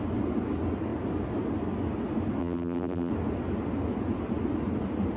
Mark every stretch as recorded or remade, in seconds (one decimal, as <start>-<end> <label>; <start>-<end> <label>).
0.0-2.4 recorded; 2.4-3.1 remade; 3.1-5.2 recorded

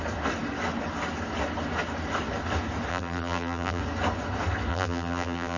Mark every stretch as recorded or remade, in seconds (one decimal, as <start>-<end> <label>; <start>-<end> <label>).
0.0-2.9 recorded; 2.9-3.8 remade; 3.8-4.7 recorded; 4.7-5.6 remade

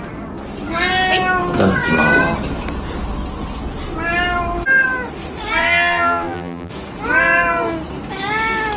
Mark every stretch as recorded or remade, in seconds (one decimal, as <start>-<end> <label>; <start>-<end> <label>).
0.0-5.6 recorded; 5.6-6.7 remade; 6.7-8.8 recorded

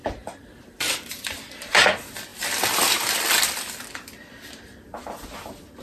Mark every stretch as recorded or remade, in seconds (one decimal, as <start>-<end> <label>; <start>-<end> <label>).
0.0-1.9 remade; 1.9-5.8 recorded